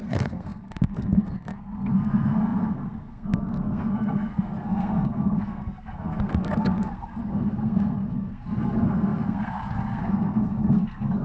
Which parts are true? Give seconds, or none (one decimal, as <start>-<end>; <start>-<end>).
none